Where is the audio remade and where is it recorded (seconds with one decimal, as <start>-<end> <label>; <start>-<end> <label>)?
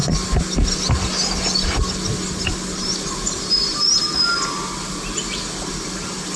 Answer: 0.0-6.4 recorded